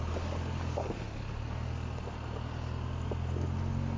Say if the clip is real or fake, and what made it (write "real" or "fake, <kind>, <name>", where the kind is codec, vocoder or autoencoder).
real